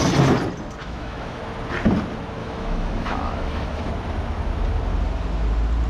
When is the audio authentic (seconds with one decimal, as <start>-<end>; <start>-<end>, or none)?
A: 0.0-0.8; 1.4-2.4; 3.9-5.9